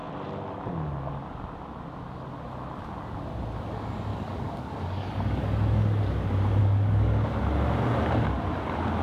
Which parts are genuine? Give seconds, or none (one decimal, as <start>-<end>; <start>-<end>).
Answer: 0.0-4.1; 5.8-6.6; 7.4-9.0